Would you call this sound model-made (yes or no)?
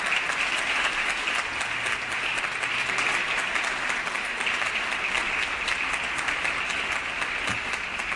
no